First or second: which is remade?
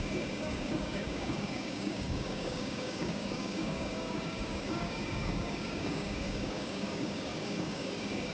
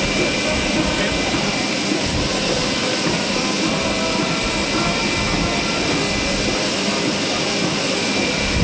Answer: first